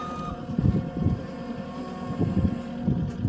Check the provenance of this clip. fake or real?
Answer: real